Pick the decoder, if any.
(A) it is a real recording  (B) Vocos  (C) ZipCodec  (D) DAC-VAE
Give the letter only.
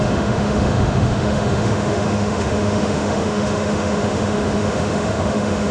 D